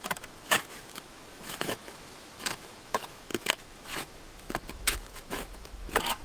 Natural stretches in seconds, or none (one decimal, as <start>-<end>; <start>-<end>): none